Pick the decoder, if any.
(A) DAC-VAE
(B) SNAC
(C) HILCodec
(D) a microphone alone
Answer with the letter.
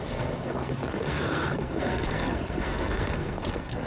B